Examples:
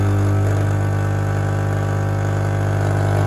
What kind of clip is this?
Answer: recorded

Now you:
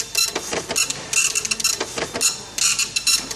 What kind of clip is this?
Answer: recorded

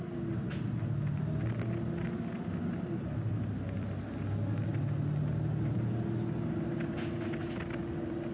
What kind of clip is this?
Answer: recorded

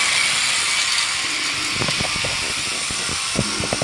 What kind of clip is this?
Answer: recorded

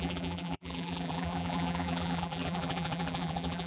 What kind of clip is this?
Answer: remade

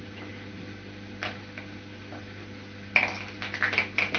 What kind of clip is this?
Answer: recorded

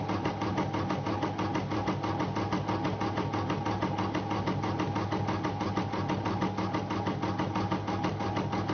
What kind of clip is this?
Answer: recorded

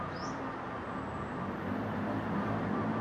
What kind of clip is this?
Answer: recorded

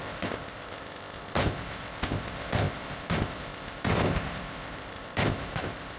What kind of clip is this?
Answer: remade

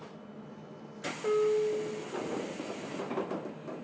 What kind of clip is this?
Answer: recorded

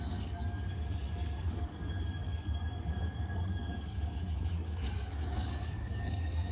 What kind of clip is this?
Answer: remade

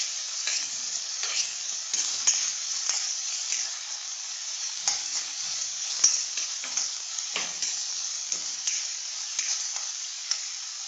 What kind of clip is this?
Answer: remade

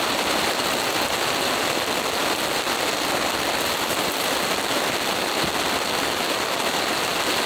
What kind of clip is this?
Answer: recorded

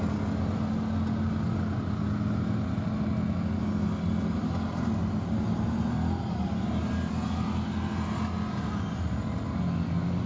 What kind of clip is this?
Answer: recorded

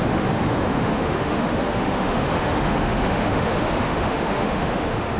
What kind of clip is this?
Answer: remade